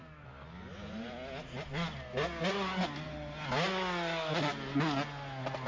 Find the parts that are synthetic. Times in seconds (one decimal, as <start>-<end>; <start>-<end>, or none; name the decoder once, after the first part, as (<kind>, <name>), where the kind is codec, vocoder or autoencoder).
none